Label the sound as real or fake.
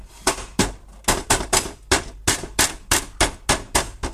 real